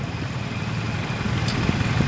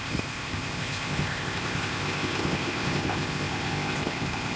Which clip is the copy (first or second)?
second